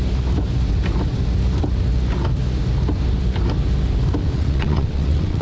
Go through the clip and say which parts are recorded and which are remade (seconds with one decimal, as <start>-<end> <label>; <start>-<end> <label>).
0.0-4.2 recorded; 4.2-5.4 remade

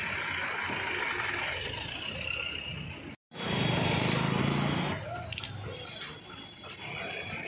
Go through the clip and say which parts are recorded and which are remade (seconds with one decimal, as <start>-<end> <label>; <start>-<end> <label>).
0.0-7.5 recorded

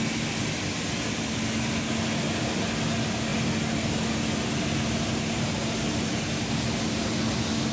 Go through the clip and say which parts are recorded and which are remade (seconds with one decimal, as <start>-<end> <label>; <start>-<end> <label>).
0.0-7.7 recorded

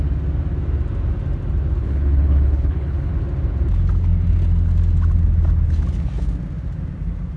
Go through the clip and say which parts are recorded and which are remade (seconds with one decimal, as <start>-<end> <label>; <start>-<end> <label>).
0.0-1.8 recorded; 1.8-3.1 remade; 3.1-7.4 recorded

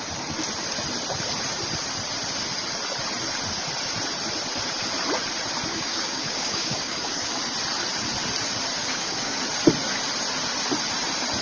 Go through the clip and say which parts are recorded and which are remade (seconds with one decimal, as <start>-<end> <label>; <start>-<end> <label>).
0.0-5.7 recorded; 5.7-7.4 remade; 7.4-8.8 recorded; 8.8-9.4 remade; 9.4-11.4 recorded

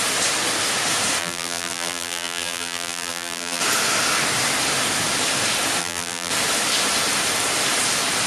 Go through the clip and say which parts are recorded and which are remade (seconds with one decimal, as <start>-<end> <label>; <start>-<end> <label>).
0.0-1.2 recorded; 1.2-3.6 remade; 3.6-5.8 recorded; 5.8-6.3 remade; 6.3-8.3 recorded

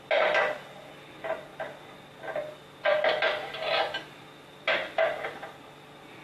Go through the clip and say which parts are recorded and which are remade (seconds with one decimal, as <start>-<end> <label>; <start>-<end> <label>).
0.0-6.2 recorded